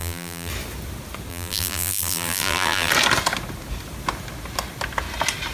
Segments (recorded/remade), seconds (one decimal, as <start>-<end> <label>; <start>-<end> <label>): 0.0-0.5 remade; 0.5-1.3 recorded; 1.3-2.9 remade; 2.9-5.5 recorded